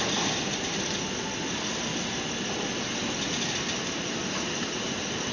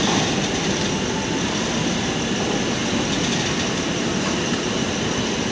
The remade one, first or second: second